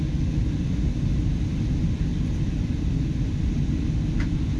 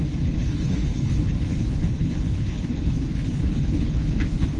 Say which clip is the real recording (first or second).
first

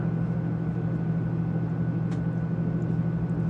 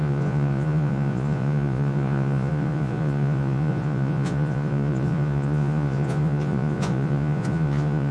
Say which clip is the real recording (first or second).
first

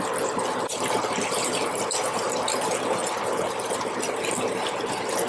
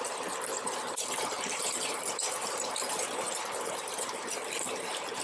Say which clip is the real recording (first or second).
first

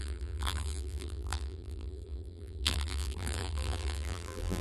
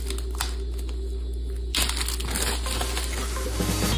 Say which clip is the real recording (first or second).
second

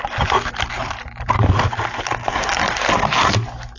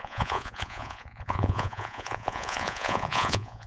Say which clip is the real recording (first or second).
first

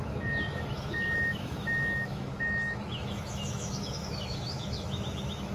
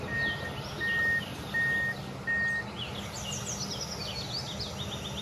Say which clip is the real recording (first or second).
second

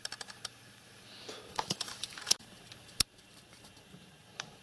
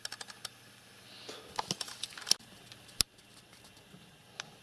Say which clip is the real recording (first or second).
second